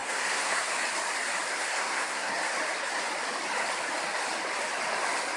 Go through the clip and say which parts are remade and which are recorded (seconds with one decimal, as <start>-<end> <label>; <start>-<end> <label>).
0.0-0.7 remade; 0.7-1.5 recorded; 1.5-2.3 remade; 2.3-5.4 recorded